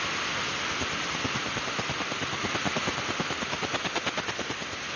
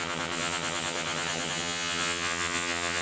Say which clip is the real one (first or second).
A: first